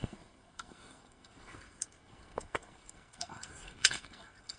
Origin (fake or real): fake